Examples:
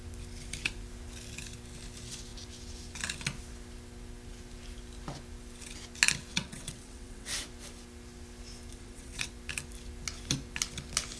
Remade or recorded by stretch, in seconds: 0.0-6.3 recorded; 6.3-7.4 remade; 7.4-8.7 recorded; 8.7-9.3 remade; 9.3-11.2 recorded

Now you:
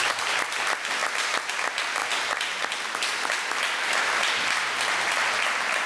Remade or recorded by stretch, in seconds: 0.0-5.9 recorded

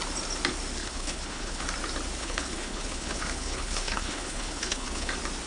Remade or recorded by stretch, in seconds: 0.0-0.8 recorded; 0.8-1.6 remade; 1.6-2.2 recorded; 2.2-5.1 remade; 5.1-5.5 recorded

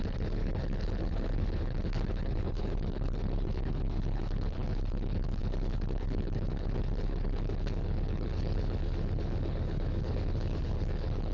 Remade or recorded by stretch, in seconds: 0.0-11.3 remade

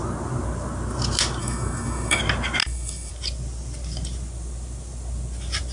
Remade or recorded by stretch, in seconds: 0.0-1.4 recorded; 1.4-2.2 remade; 2.2-2.6 recorded; 2.6-3.1 remade; 3.1-5.7 recorded

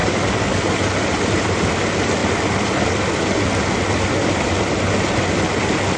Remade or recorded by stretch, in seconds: 0.0-0.6 remade; 0.6-6.0 recorded